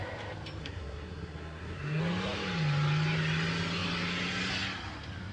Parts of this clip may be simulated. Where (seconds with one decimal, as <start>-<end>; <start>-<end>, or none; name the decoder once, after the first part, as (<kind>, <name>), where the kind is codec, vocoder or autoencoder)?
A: 0.6-2.0 (codec, SNAC)